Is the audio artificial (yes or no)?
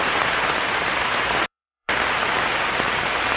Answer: yes